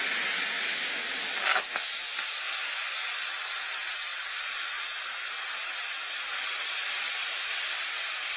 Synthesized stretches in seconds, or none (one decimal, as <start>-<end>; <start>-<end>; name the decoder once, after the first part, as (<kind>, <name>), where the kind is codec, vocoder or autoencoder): none